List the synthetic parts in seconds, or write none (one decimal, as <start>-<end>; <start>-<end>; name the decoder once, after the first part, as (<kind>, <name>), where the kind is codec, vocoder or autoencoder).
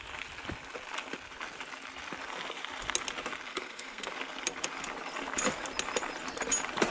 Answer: 3.5-4.1 (codec, SNAC)